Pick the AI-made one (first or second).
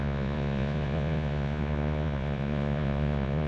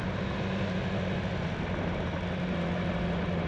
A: first